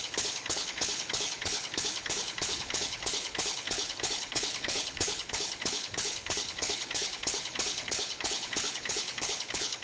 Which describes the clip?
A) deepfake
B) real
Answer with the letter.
A